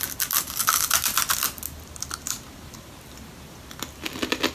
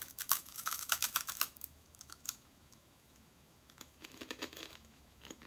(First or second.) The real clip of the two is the first